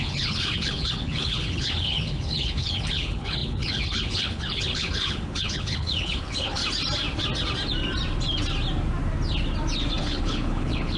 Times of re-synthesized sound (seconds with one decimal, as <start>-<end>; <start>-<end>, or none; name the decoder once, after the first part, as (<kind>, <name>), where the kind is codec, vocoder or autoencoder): 0.0-6.6 (codec, HILCodec); 10.0-11.0